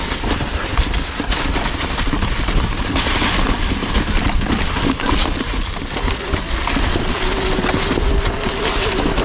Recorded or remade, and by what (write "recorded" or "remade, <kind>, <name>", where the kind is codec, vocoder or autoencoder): recorded